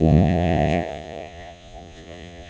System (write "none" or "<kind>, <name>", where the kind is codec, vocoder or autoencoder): vocoder, Vocos